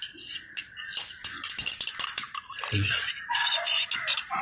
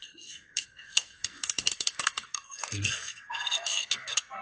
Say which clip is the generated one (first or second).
second